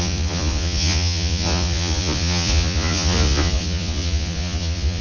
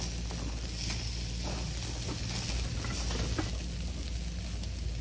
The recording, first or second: second